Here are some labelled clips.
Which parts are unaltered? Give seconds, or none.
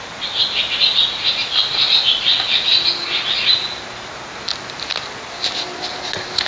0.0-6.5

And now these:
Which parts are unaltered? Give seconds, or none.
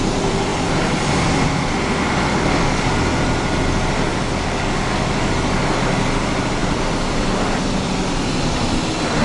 0.0-2.3; 2.9-4.1; 5.3-9.2